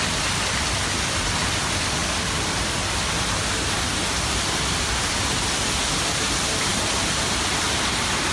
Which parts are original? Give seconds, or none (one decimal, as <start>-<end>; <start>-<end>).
0.0-4.0; 5.3-8.3